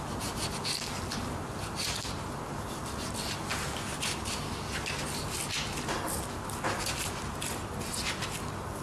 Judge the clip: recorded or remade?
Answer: recorded